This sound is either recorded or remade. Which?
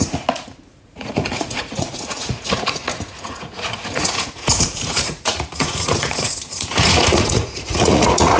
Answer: remade